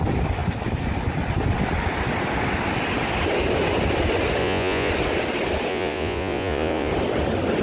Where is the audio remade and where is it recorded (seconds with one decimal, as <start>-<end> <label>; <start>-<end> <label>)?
0.0-4.4 recorded; 4.4-4.9 remade; 4.9-5.7 recorded; 5.7-6.9 remade; 6.9-7.6 recorded